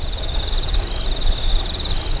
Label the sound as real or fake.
real